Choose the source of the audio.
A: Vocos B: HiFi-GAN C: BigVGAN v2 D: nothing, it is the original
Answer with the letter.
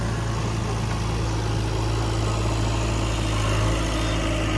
D